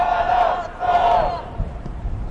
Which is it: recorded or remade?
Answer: remade